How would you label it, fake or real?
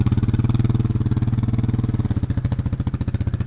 real